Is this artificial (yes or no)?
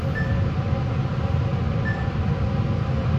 no